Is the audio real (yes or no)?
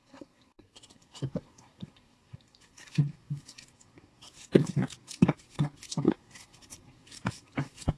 no